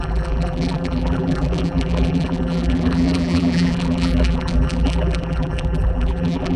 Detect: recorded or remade remade